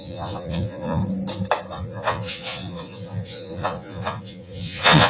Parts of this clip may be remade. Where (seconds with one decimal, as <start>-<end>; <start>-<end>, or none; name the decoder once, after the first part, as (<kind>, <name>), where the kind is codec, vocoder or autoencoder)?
0.0-1.0 (vocoder, Vocos); 1.7-5.1